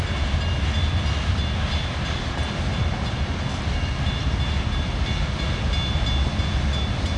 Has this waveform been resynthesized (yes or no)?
no